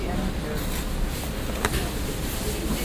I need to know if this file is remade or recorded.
recorded